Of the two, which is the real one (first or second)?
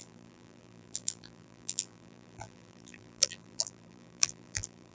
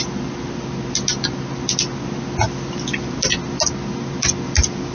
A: second